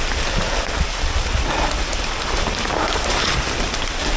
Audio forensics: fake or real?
real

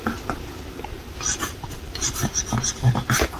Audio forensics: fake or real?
fake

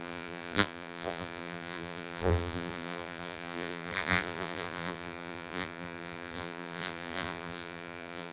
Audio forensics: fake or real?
fake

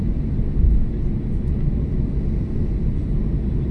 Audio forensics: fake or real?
real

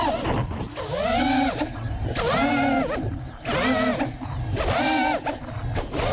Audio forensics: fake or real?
real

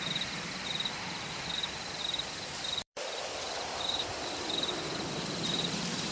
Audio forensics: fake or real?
fake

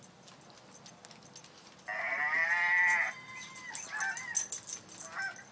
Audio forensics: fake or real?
real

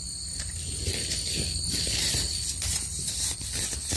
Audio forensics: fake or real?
fake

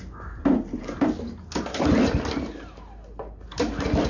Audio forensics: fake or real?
real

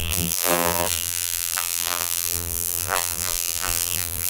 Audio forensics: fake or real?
fake